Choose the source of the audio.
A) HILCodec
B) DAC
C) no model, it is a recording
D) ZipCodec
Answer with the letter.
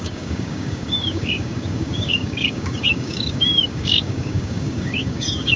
B